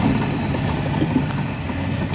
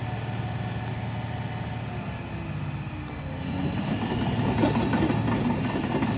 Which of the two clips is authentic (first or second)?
second